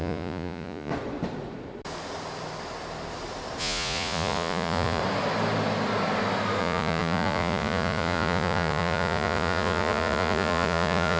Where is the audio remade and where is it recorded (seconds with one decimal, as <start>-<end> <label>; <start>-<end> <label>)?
0.0-0.9 remade; 0.9-3.6 recorded; 3.6-5.0 remade; 5.0-6.6 recorded; 6.6-11.2 remade

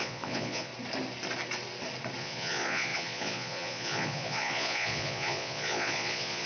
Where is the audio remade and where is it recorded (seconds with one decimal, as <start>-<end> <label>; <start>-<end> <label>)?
0.0-0.7 remade; 0.7-2.2 recorded; 2.2-6.5 remade

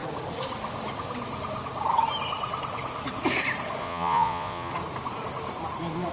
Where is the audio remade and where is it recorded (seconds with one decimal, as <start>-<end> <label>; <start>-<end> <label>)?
0.0-3.8 recorded; 3.8-4.7 remade; 4.7-6.1 recorded

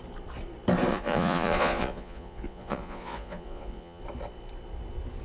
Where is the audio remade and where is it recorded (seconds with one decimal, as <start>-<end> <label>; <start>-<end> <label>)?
0.0-0.9 recorded; 0.9-4.0 remade; 4.0-5.2 recorded